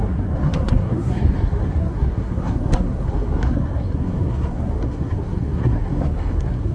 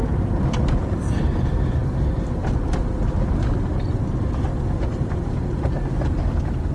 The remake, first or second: first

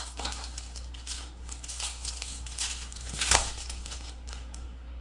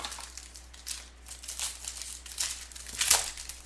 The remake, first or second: first